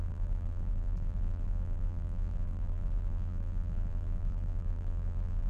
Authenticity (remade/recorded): remade